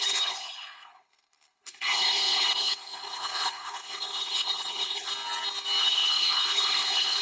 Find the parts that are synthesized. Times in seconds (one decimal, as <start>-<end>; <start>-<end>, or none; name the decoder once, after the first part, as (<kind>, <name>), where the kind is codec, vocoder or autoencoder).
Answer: 0.0-5.1 (codec, HILCodec); 5.8-7.2